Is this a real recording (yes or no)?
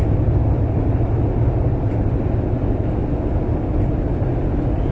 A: yes